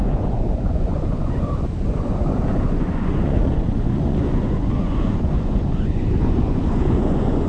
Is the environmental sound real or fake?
fake